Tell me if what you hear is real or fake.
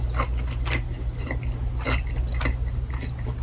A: real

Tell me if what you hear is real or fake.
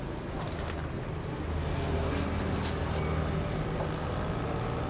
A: real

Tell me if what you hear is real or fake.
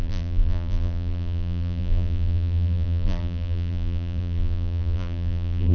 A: fake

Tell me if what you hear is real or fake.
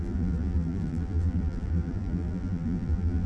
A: fake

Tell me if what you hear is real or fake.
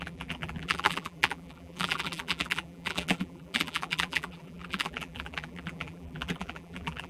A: fake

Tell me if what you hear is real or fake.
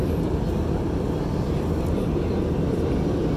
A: real